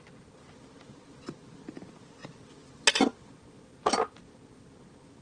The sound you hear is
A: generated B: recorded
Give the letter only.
B